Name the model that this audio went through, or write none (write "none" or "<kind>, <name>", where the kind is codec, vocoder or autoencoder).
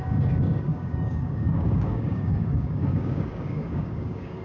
codec, DAC